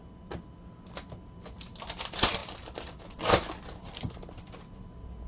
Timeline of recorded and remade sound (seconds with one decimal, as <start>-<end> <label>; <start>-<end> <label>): 0.0-5.3 recorded